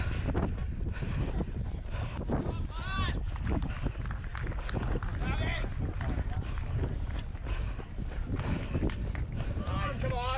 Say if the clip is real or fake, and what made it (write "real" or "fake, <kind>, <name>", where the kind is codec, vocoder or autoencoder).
real